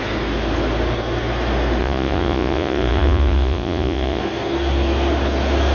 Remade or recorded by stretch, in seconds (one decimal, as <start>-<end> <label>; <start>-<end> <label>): 0.0-1.8 recorded; 1.8-4.2 remade; 4.2-5.7 recorded